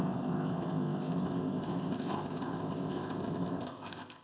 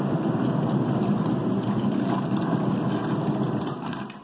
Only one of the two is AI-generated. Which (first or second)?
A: first